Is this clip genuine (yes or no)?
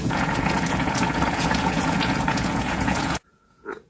no